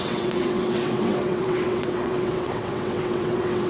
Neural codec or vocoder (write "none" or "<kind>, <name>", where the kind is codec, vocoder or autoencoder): vocoder, WaveNeXt